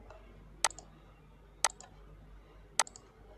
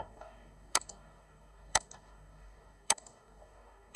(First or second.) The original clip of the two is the first